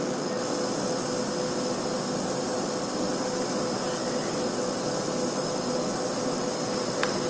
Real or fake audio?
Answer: real